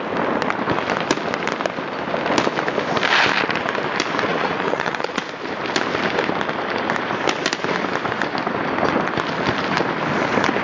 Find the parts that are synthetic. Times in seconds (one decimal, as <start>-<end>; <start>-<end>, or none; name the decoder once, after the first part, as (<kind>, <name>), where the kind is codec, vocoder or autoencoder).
4.3-5.2 (vocoder, Vocos)